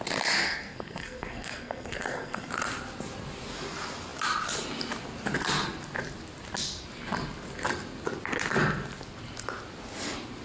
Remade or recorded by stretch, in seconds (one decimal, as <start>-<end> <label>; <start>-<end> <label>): 0.0-0.4 recorded; 0.4-2.5 remade; 2.5-10.4 recorded